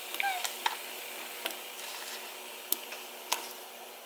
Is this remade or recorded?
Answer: recorded